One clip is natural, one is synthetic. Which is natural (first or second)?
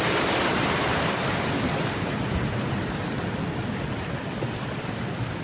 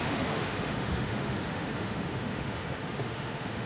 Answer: first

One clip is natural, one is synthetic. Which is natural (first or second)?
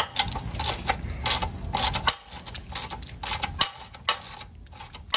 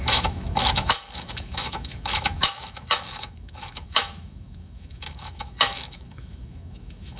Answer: first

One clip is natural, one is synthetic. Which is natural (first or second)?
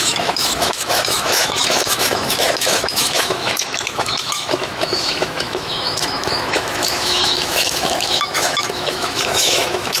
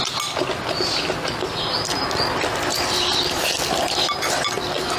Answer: second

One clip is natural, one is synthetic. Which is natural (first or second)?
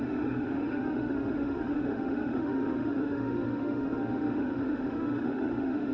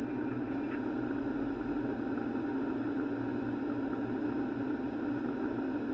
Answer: second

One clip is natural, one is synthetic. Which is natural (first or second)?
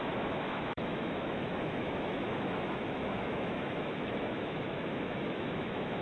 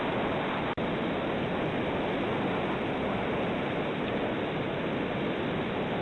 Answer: second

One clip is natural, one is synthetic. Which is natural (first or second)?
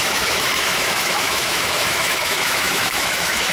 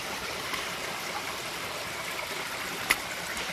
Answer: second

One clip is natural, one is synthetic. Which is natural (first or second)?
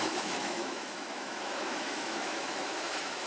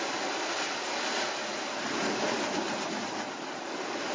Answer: second